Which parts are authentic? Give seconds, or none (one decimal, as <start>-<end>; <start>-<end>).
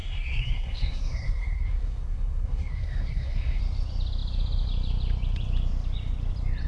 3.6-6.7